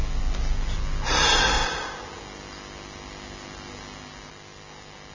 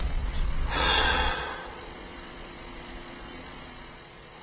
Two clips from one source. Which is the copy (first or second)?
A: second